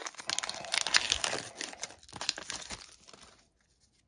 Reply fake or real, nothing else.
real